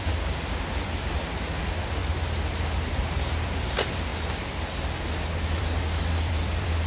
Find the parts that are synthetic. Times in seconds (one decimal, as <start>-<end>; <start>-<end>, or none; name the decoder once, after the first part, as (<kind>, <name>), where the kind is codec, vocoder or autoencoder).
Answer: 0.0-2.0 (vocoder, BigVGAN v2); 2.9-4.1; 5.6-6.9